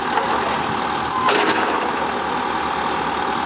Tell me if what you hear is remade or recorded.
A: remade